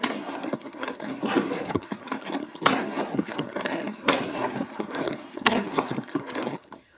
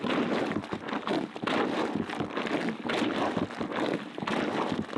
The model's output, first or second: first